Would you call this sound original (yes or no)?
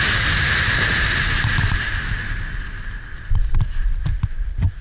yes